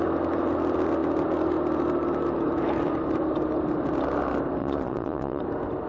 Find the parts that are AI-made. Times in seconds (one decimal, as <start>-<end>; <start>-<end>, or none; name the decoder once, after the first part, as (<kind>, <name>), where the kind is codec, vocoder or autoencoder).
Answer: 4.6-5.4 (vocoder, Vocos)